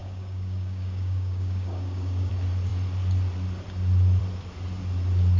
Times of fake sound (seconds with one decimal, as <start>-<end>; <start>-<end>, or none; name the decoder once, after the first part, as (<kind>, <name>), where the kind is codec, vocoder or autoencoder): 0.0-2.3 (codec, DAC)